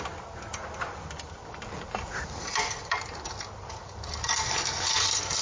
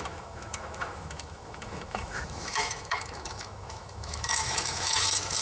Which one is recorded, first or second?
first